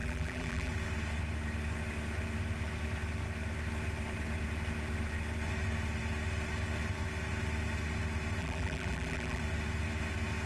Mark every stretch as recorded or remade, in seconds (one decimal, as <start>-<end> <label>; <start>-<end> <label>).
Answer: 0.0-0.7 remade; 0.7-8.4 recorded; 8.4-9.4 remade; 9.4-10.5 recorded